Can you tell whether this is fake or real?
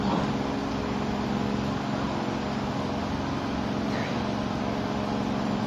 real